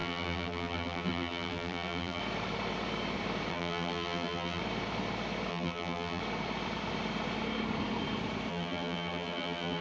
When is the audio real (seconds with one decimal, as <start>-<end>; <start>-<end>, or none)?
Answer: 2.2-3.5; 4.6-5.5; 6.2-8.5